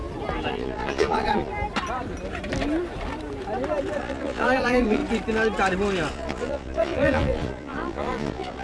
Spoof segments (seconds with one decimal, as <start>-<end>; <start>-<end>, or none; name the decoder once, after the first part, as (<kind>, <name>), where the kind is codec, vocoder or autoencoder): 0.5-1.5 (vocoder, Vocos); 4.0-5.0; 6.1-8.6